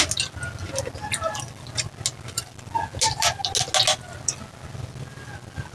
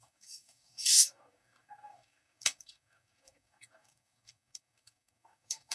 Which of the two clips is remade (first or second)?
second